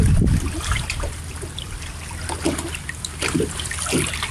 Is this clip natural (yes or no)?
yes